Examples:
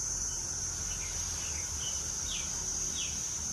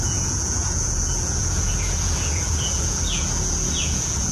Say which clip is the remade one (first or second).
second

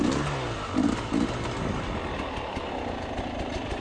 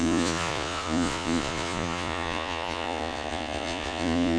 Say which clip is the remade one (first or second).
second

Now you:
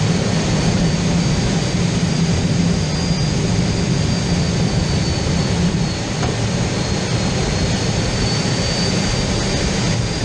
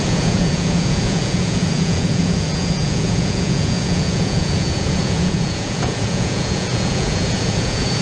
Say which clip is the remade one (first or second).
second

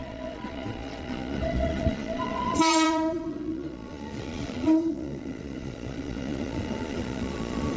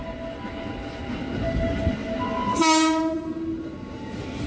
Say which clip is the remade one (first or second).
first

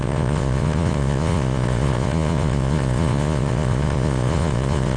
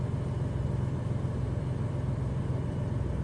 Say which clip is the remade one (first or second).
first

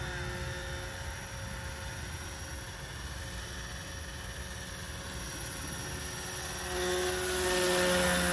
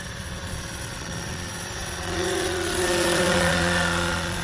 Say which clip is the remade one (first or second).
second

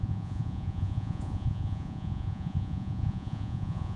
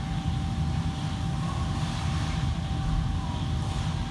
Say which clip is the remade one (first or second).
first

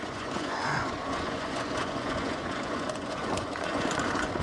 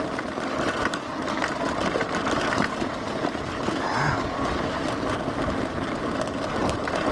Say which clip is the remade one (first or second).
first